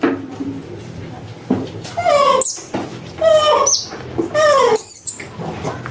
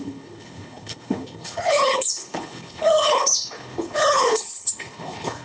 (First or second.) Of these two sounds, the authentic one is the first